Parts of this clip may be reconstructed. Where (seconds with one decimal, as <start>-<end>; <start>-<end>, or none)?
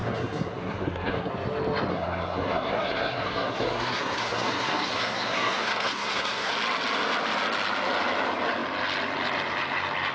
0.0-1.3; 1.9-6.5